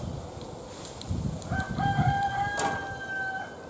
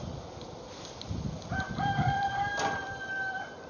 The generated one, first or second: second